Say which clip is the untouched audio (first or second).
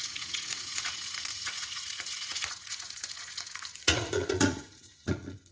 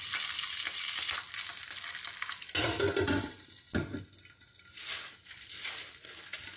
second